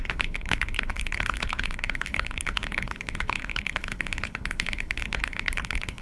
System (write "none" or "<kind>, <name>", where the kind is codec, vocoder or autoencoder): codec, HILCodec